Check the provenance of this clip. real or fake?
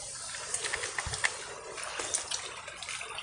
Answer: real